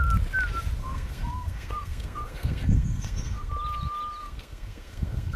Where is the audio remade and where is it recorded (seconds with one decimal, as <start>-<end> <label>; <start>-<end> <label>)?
0.0-0.8 recorded; 0.8-3.5 remade; 3.5-4.2 recorded; 4.2-5.4 remade